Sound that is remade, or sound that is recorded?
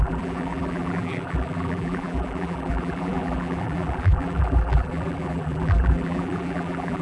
remade